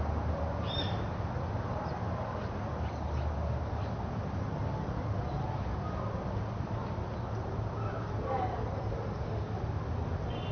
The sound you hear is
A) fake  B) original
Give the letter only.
B